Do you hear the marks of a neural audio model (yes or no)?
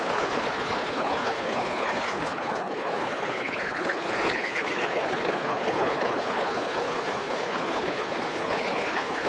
yes